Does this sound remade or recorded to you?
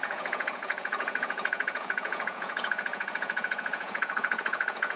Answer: remade